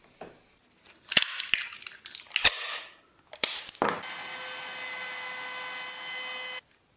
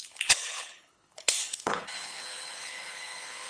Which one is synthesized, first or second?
second